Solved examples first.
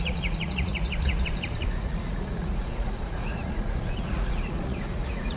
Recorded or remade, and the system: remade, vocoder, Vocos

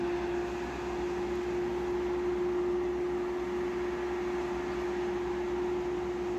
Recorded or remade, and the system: recorded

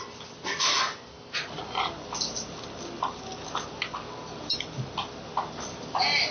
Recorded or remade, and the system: recorded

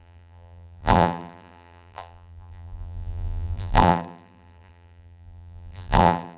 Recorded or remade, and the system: remade, vocoder, BigVGAN v2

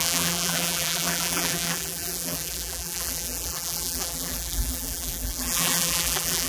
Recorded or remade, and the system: remade, vocoder, BigVGAN v2